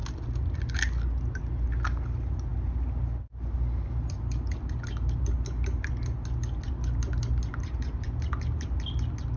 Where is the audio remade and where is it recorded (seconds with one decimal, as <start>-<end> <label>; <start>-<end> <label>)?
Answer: 0.0-9.4 recorded